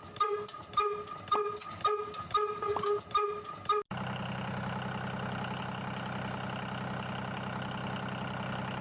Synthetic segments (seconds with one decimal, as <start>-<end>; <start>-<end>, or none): none